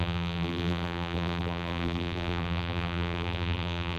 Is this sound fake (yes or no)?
yes